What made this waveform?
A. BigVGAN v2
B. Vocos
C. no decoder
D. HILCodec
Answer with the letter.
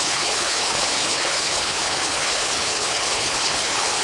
D